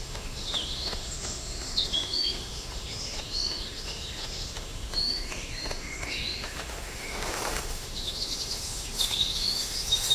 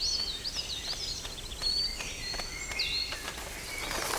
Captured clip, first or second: second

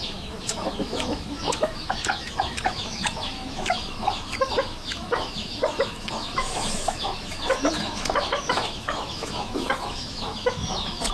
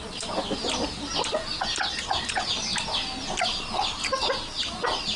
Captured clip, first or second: second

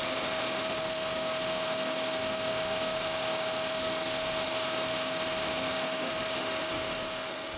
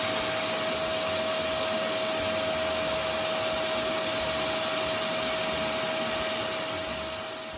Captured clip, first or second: second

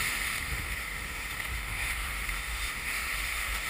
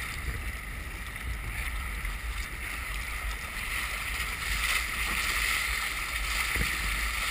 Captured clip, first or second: second